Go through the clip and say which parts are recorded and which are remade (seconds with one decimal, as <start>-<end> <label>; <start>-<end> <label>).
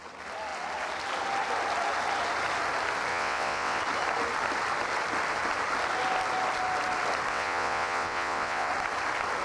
0.0-3.1 recorded; 3.1-3.8 remade; 3.8-7.3 recorded; 7.3-8.7 remade; 8.7-9.4 recorded